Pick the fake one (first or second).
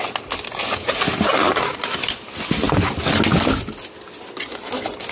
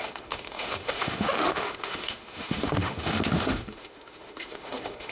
second